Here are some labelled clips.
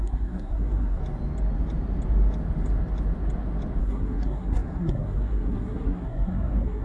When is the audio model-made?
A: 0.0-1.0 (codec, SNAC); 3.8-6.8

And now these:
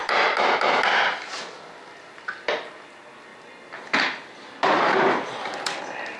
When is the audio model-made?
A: none

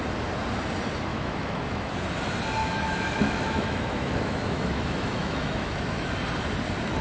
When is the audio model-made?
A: 1.1-1.9 (autoencoder, DAC-VAE); 2.6-6.1

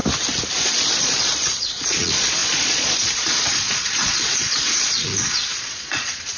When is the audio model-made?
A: 0.6-6.4 (vocoder, Vocos)

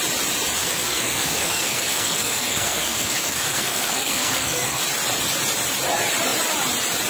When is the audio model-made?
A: 0.6-4.8 (codec, SNAC)

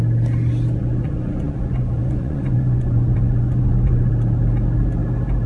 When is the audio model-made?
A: 0.8-4.1 (vocoder, Vocos)

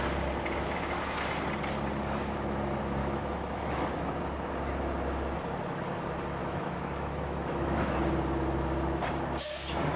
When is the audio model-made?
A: 3.0-4.1 (autoencoder, DAC-VAE); 6.4-8.0

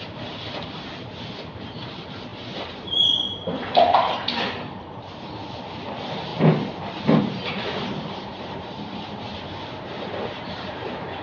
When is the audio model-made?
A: 0.0-6.3 (vocoder, BigVGAN v2); 7.2-11.2